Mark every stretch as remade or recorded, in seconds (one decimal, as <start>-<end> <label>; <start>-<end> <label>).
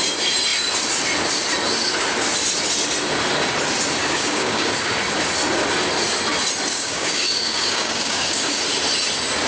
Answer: 0.0-4.0 recorded; 4.0-4.7 remade; 4.7-6.7 recorded; 6.7-8.6 remade; 8.6-9.5 recorded